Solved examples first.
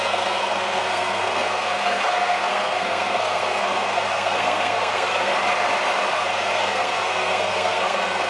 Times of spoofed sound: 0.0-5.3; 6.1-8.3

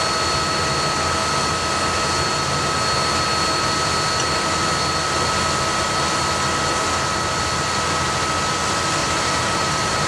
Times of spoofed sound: 9.0-10.1

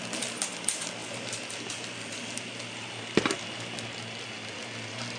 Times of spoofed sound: none

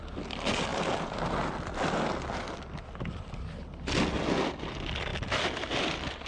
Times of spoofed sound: none

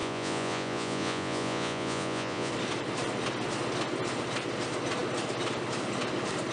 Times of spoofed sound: 0.0-2.5

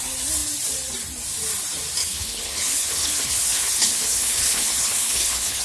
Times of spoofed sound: 2.0-5.6

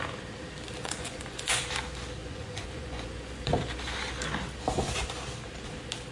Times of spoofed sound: 0.8-1.6; 2.2-3.5